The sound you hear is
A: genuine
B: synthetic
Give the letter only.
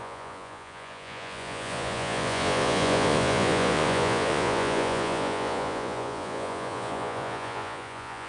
B